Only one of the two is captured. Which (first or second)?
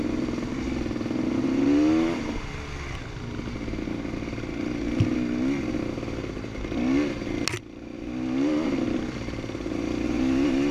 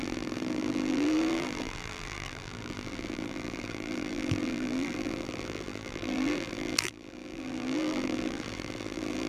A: first